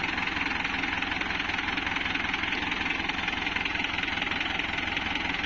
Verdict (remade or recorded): recorded